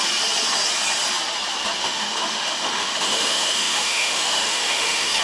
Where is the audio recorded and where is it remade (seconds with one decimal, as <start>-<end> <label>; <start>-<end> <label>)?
0.0-1.8 recorded; 1.8-5.2 remade

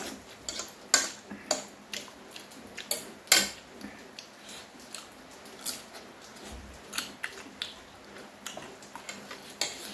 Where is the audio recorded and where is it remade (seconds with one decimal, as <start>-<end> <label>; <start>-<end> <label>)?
0.0-9.9 recorded

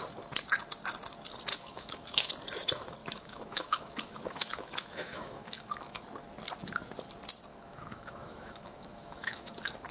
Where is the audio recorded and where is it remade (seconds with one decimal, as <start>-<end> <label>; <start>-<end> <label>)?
0.0-1.5 recorded; 1.5-2.3 remade; 2.3-3.0 recorded; 3.0-6.0 remade; 6.0-7.5 recorded; 7.5-9.5 remade; 9.5-9.9 recorded